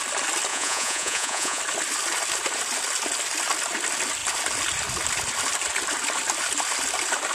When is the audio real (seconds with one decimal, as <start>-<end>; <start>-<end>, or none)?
0.0-0.5; 1.6-7.3